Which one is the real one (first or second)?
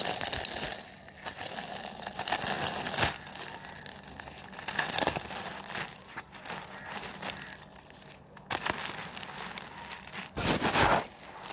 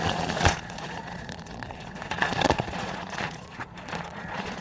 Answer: first